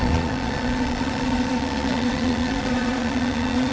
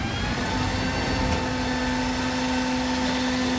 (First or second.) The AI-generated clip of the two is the first